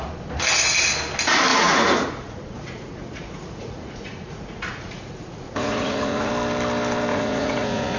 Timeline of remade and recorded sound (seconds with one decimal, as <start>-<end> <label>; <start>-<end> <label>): 0.0-1.5 recorded; 1.5-6.3 remade; 6.3-7.1 recorded; 7.1-8.0 remade

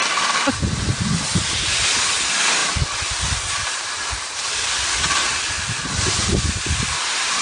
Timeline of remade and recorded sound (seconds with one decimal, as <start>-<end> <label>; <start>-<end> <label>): 0.0-7.4 recorded